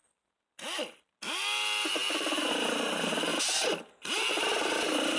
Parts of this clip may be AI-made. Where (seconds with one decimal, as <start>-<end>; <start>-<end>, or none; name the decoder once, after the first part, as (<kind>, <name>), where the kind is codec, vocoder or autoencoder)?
none